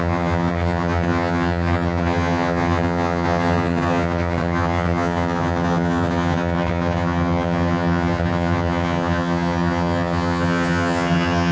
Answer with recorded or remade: remade